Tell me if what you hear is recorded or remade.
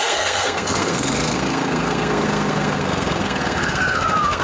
remade